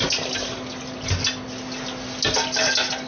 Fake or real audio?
real